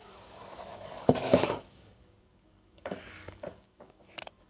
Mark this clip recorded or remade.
remade